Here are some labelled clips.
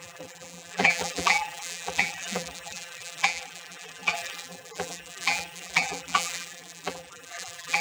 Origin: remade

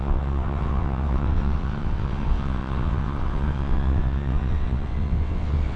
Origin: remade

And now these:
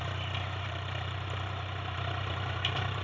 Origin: remade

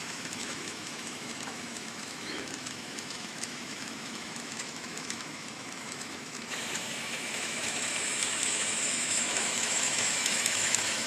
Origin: remade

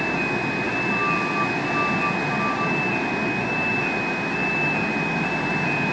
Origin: recorded